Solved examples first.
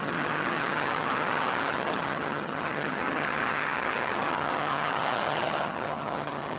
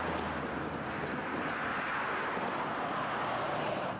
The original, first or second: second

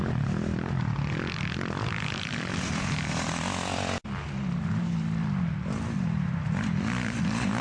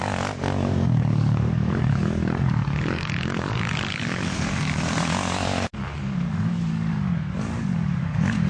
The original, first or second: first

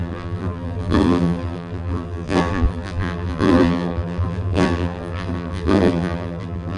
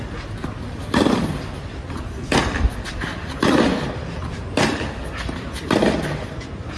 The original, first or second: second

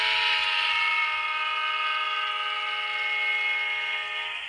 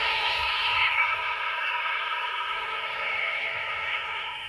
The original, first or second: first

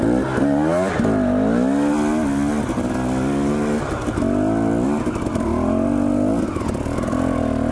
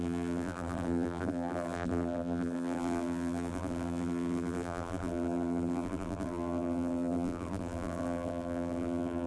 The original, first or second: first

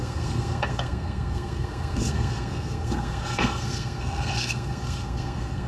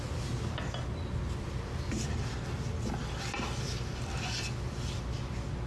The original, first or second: second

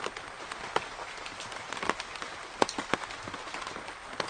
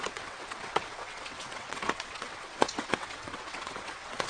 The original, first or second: first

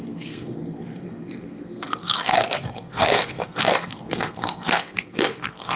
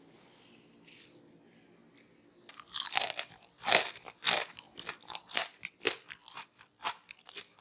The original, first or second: second